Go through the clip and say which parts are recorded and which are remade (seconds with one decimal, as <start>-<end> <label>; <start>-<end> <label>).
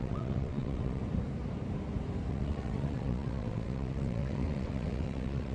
0.0-1.0 remade; 1.0-2.3 recorded; 2.3-5.5 remade